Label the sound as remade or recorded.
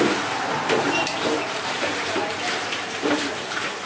remade